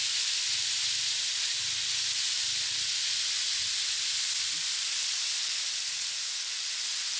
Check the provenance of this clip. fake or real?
real